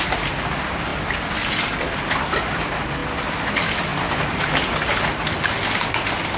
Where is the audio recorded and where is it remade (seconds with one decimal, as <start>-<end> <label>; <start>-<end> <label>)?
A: 0.0-3.0 recorded; 3.0-3.5 remade; 3.5-6.4 recorded

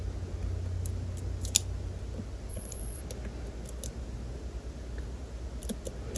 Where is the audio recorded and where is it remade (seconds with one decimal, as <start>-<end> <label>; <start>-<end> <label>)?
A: 0.0-2.5 recorded; 2.5-3.0 remade; 3.0-6.2 recorded

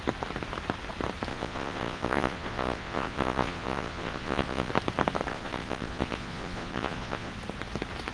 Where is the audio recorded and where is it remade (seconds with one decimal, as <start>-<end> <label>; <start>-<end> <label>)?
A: 0.0-1.3 recorded; 1.3-4.7 remade; 4.7-5.3 recorded; 5.3-7.3 remade; 7.3-8.1 recorded

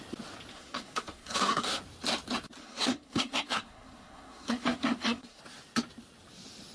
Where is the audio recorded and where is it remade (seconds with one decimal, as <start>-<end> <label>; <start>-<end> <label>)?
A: 0.0-0.5 recorded; 0.5-1.8 remade; 1.8-2.6 recorded; 2.6-5.4 remade; 5.4-6.7 recorded

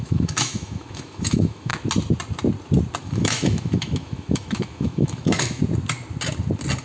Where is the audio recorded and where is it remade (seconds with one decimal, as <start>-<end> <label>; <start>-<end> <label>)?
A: 0.0-1.7 remade; 1.7-3.0 recorded; 3.0-5.6 remade; 5.6-6.8 recorded

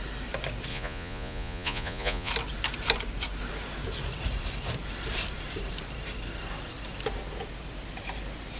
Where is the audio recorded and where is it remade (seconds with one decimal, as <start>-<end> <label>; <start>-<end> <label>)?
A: 0.0-0.7 recorded; 0.7-2.3 remade; 2.3-8.6 recorded

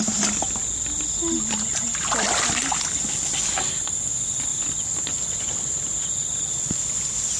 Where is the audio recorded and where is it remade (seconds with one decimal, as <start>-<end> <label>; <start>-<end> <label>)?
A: 0.0-7.4 recorded

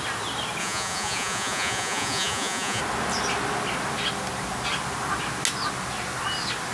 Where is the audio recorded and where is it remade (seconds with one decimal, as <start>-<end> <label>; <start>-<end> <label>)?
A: 0.0-0.6 recorded; 0.6-2.8 remade; 2.8-6.7 recorded